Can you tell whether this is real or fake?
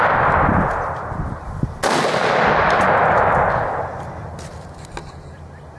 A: real